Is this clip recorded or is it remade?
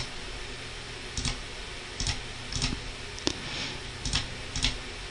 recorded